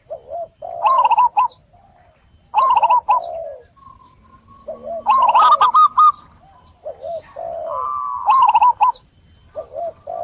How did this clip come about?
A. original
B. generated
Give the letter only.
A